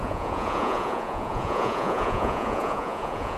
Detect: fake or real fake